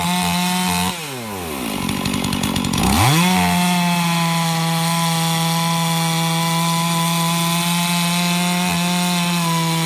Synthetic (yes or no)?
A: no